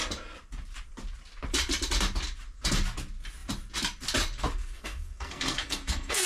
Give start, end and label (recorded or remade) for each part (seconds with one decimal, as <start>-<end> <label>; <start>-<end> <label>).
0.0-4.6 recorded; 4.6-6.3 remade